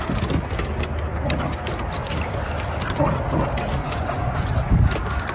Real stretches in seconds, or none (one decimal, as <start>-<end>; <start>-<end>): 0.0-3.8; 4.5-5.3